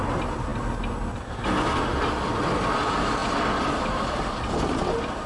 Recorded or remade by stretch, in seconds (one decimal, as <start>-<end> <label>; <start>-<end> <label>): 0.0-5.3 recorded